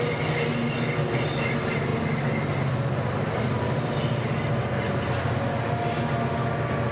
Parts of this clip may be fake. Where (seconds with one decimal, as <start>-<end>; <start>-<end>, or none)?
none